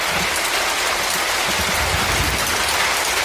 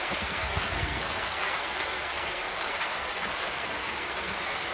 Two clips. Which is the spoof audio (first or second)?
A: second